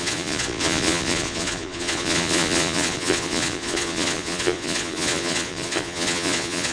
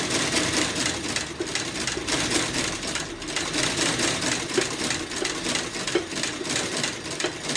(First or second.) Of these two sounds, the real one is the second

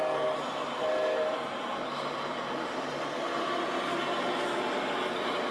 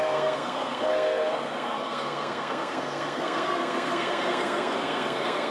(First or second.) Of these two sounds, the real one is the first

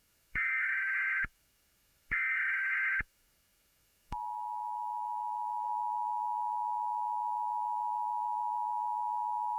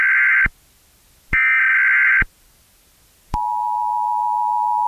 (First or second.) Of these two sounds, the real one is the second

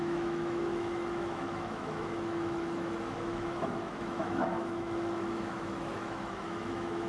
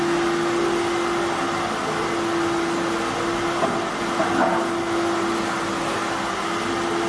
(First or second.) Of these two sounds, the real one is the second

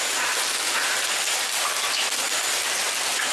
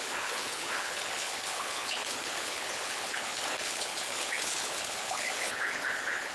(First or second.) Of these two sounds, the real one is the first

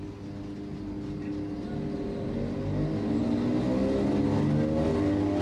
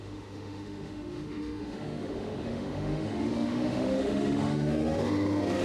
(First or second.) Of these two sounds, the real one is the first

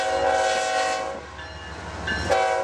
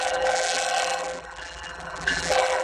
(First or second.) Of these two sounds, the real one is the first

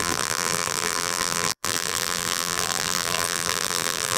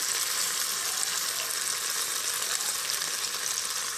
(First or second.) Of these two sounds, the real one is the second